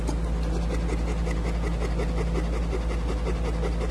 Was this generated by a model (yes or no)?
no